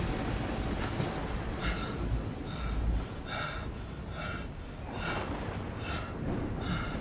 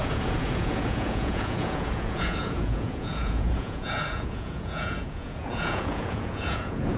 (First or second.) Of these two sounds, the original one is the first